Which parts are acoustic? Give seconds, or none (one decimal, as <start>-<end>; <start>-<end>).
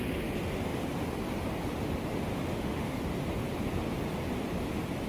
0.0-2.3; 3.0-5.1